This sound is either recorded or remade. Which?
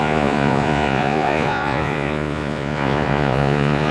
remade